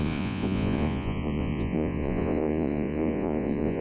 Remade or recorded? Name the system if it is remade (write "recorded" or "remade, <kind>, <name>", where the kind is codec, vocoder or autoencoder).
remade, vocoder, Vocos